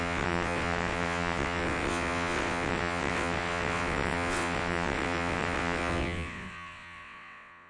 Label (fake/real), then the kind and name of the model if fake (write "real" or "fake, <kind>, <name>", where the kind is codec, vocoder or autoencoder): fake, vocoder, WaveNeXt